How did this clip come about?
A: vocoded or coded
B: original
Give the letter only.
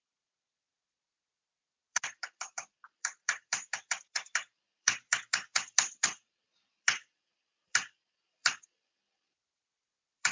A